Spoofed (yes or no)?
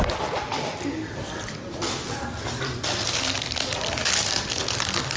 no